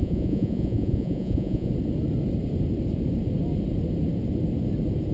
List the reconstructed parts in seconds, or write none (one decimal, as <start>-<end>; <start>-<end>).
0.0-1.7